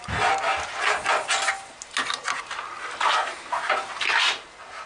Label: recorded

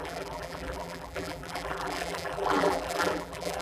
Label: remade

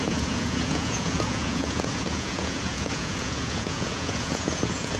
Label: remade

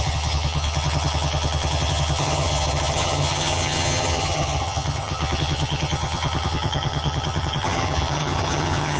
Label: remade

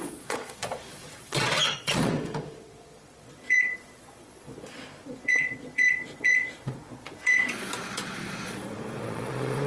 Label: remade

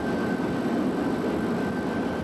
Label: recorded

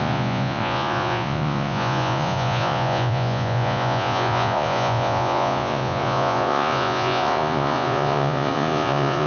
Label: remade